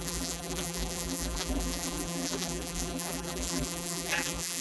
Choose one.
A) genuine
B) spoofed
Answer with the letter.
B